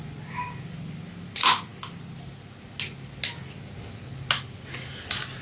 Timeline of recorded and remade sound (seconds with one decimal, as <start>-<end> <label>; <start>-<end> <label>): 0.0-5.4 recorded